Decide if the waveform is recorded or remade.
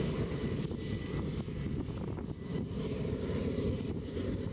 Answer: recorded